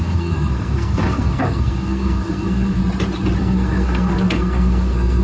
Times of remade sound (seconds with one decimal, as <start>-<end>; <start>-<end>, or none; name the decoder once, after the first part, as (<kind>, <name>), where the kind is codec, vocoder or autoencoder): 0.0-2.8 (codec, SNAC); 3.4-5.2